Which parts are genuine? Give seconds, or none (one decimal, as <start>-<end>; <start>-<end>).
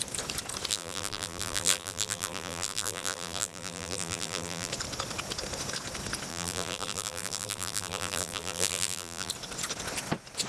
0.0-0.7; 4.7-6.3; 9.3-10.5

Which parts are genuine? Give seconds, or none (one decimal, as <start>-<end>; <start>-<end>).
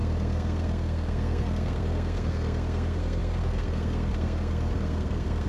none